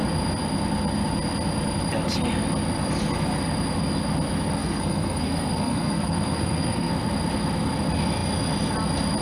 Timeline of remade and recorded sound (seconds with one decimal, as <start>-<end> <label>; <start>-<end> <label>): 0.0-4.6 recorded; 4.6-6.9 remade; 6.9-9.2 recorded